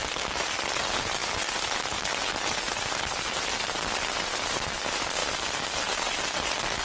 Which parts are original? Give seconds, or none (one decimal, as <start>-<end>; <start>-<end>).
0.0-6.8